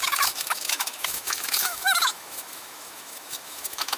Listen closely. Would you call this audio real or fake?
fake